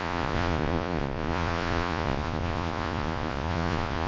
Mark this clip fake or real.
fake